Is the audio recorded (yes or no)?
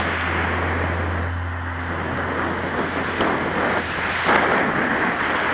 yes